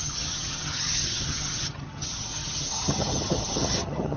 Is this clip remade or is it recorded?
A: remade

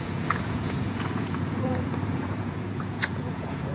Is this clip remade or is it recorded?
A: remade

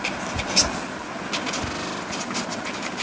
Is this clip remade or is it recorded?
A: recorded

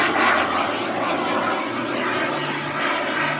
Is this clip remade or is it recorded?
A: recorded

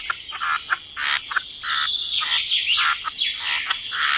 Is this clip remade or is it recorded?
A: recorded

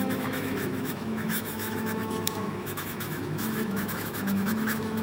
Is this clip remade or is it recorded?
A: remade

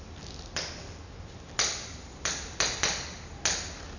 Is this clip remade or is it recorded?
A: recorded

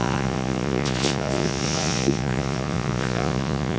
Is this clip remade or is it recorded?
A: remade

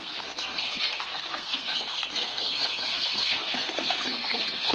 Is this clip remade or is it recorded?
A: remade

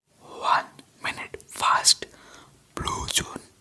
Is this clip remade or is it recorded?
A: recorded